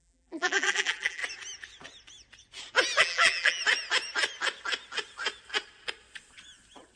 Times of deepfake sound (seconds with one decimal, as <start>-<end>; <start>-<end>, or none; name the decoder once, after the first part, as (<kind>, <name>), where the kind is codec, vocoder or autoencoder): 0.0-1.2 (vocoder, BigVGAN v2); 3.0-3.6